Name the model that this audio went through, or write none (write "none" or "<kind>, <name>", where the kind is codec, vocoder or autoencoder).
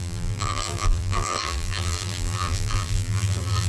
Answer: vocoder, BigVGAN v2